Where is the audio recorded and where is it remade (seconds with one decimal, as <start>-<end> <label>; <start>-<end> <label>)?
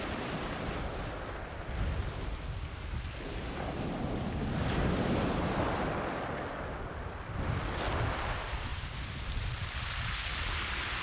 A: 0.0-11.0 recorded